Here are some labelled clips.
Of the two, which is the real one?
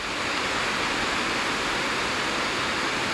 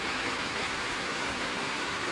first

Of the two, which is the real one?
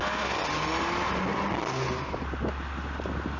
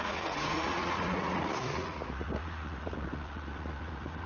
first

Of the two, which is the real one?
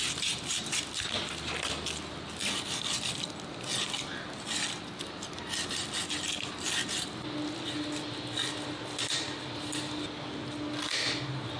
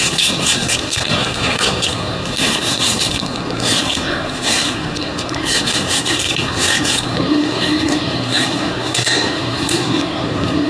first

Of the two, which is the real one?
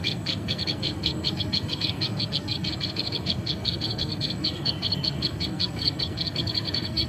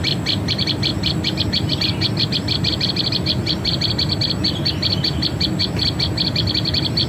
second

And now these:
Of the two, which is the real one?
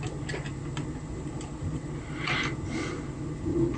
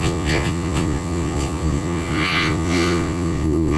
first